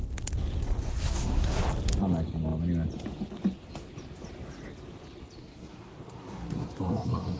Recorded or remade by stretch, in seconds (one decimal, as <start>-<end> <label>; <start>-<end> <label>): 0.0-0.9 recorded; 0.9-1.6 remade; 1.6-5.4 recorded; 5.4-7.4 remade